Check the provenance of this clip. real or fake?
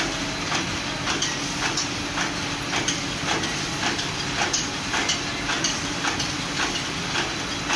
real